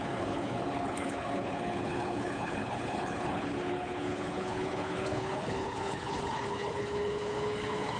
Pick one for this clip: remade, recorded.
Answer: remade